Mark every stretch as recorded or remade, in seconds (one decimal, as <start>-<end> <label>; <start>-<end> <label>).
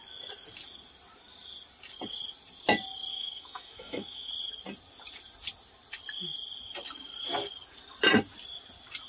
0.0-3.1 recorded; 3.1-4.3 remade; 4.3-9.1 recorded